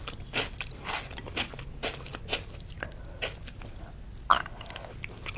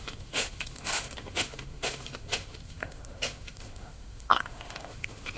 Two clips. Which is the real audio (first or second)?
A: first